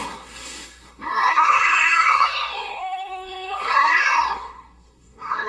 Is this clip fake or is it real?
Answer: fake